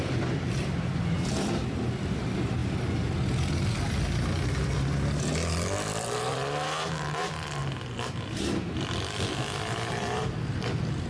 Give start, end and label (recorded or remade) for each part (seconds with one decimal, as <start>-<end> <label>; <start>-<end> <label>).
0.0-2.6 remade; 2.6-5.5 recorded; 5.5-7.6 remade; 7.6-8.4 recorded; 8.4-11.1 remade